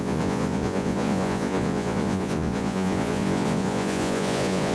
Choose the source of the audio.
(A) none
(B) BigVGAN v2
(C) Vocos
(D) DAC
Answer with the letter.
C